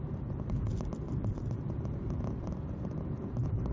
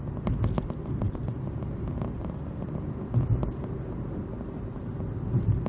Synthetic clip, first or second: first